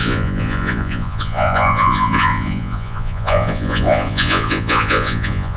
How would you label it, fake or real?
fake